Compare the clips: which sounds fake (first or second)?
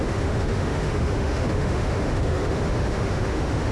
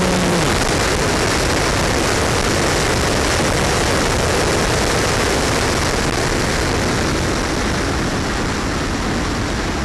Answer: first